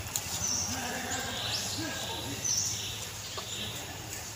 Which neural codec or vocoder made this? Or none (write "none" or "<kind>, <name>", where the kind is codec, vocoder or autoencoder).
none